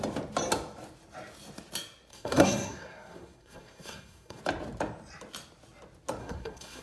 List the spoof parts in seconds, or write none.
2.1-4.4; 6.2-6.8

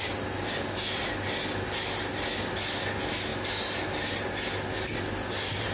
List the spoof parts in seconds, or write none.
none